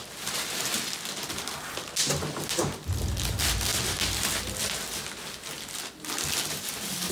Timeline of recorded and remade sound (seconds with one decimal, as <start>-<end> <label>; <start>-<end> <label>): 0.0-7.1 recorded